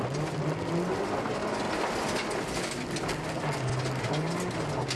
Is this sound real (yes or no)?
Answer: yes